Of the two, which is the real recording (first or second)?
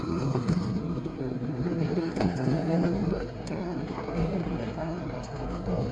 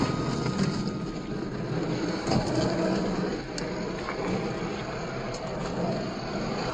second